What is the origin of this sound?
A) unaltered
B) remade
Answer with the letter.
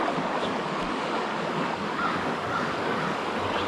B